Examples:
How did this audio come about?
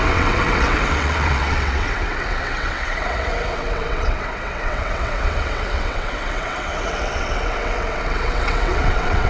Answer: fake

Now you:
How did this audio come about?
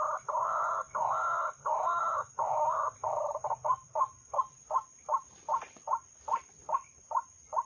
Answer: fake